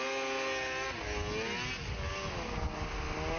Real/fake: real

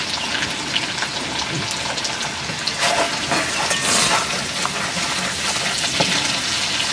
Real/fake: real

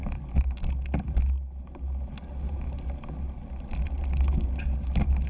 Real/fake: real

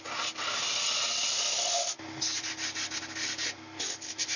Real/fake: real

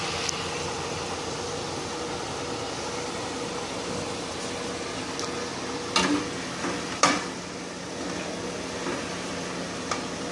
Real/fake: real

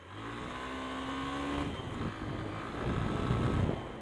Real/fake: real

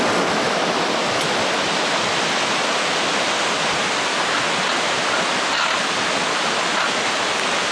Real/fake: real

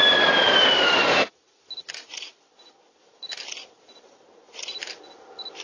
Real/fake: real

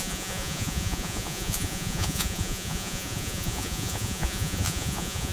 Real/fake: fake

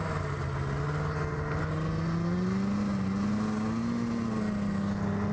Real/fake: real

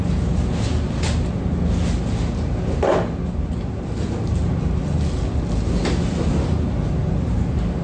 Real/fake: real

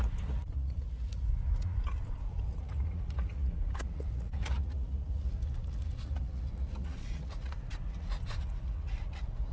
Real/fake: fake